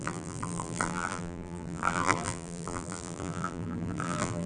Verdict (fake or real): fake